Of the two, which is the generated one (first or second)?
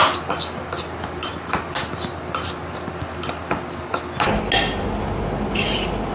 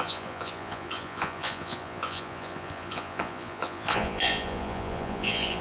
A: second